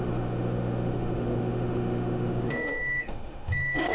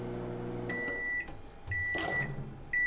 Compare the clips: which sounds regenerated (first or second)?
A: first